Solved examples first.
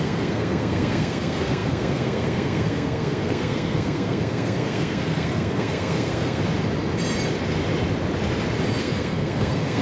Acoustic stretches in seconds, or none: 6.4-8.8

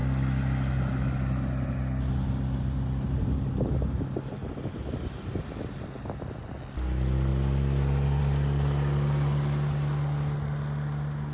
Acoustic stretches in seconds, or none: 0.0-4.4; 5.9-11.3

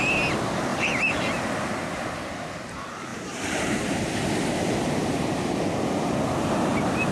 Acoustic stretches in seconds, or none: 0.0-0.7; 2.2-3.1; 4.2-7.1

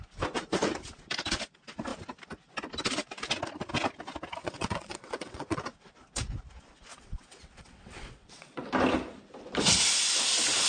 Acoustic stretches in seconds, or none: 0.0-4.4; 5.6-6.9; 8.7-10.7

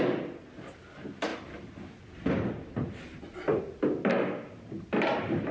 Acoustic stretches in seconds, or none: 0.0-5.5

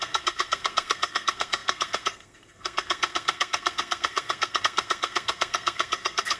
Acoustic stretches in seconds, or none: none

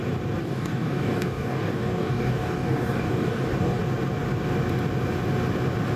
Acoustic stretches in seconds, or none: 0.0-0.4; 3.8-6.0